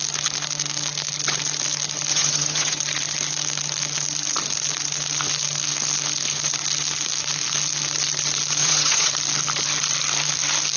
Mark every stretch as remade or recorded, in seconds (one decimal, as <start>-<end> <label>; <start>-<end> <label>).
0.0-2.1 recorded; 2.1-2.8 remade; 2.8-8.6 recorded; 8.6-9.1 remade; 9.1-10.8 recorded